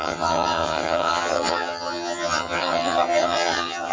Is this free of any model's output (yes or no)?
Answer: no